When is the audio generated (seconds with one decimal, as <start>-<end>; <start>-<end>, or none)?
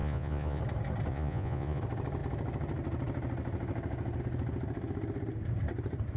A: 0.0-0.6; 1.1-1.8